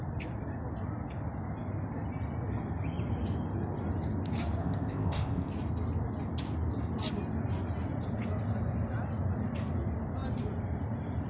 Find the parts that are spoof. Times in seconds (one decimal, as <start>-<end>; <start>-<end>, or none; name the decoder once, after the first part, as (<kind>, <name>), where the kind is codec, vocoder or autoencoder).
4.6-5.5 (codec, ZipCodec)